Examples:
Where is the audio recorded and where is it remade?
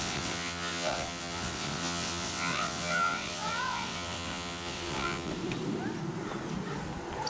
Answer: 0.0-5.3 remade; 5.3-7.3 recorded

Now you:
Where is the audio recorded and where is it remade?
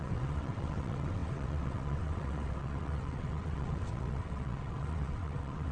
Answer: 0.0-5.7 remade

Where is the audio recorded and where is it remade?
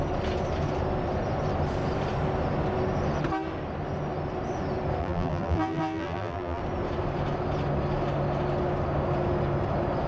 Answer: 0.0-5.0 recorded; 5.0-6.6 remade; 6.6-10.1 recorded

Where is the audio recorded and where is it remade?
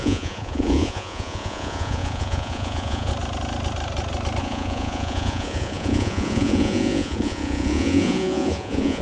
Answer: 0.0-3.1 remade; 3.1-4.4 recorded; 4.4-9.0 remade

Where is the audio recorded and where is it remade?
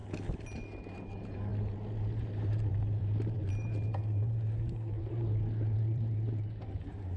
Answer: 0.0-0.8 recorded; 0.8-7.2 remade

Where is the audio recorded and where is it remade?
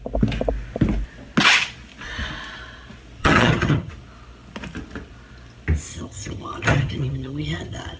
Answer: 0.0-3.2 recorded; 3.2-3.9 remade; 3.9-5.9 recorded; 5.9-8.0 remade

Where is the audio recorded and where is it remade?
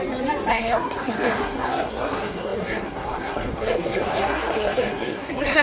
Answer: 0.0-0.5 recorded; 0.5-5.6 remade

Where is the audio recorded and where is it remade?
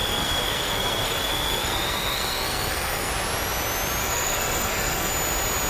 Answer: 0.0-3.1 remade; 3.1-4.0 recorded; 4.0-5.1 remade; 5.1-5.7 recorded